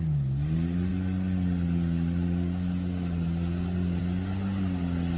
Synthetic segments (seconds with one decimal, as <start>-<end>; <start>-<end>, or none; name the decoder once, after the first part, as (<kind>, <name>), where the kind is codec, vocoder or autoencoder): none